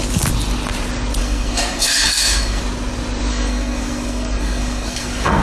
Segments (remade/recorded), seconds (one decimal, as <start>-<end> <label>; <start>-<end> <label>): 0.0-1.2 recorded; 1.2-2.6 remade; 2.6-3.3 recorded; 3.3-5.4 remade